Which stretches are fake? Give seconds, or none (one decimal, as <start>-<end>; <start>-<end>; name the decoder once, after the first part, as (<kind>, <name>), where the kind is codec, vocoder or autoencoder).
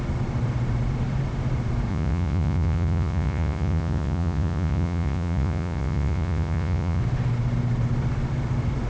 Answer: 1.9-7.0 (vocoder, Vocos)